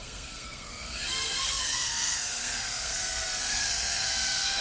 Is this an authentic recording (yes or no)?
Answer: no